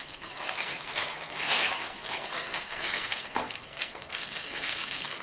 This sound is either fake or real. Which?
fake